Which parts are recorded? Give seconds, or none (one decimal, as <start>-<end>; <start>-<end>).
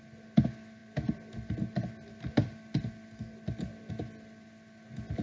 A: 0.0-5.2